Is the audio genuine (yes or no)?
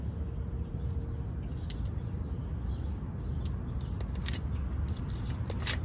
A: yes